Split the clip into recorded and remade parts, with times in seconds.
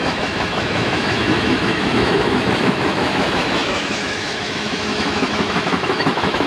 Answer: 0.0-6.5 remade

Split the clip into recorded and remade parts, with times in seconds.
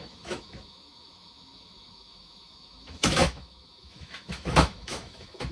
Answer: 0.0-5.5 remade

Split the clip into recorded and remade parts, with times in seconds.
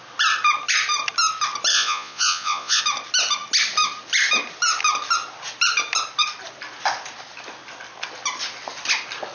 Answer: 0.0-1.7 recorded; 1.7-2.8 remade; 2.8-9.3 recorded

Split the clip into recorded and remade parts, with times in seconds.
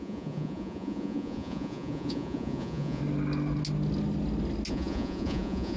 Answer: 0.0-3.0 remade; 3.0-4.7 recorded; 4.7-5.8 remade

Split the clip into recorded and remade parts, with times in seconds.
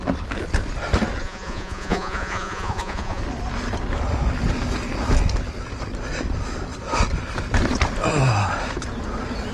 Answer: 0.0-1.2 recorded; 1.2-3.2 remade; 3.2-9.5 recorded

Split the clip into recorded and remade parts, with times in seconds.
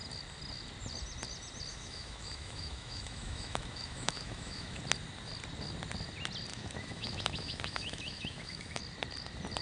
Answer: 0.0-1.7 recorded; 1.7-4.8 remade; 4.8-6.5 recorded; 6.5-8.8 remade; 8.8-9.6 recorded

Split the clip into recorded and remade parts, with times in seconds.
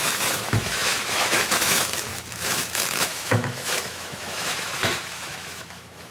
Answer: 0.0-6.1 remade